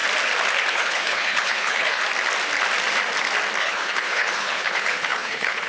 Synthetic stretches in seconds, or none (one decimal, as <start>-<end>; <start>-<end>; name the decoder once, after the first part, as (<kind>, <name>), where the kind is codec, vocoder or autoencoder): 0.7-2.0 (codec, HILCodec); 3.6-5.7